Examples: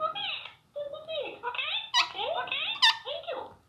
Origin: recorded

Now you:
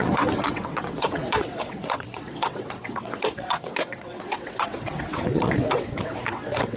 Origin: remade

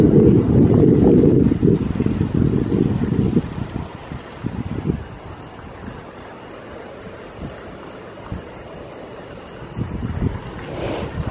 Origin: recorded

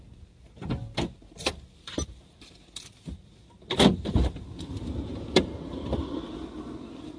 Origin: recorded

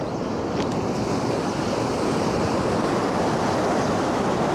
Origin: recorded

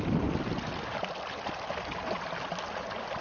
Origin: recorded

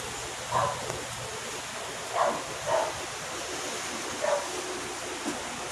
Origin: recorded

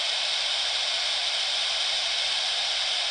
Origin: remade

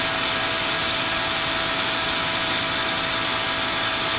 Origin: recorded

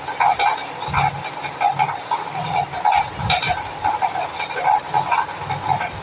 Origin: recorded